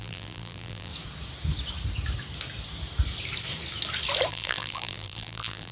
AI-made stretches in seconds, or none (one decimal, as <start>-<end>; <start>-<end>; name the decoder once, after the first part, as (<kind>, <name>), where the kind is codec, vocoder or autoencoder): 0.0-0.9 (vocoder, BigVGAN v2); 4.3-5.7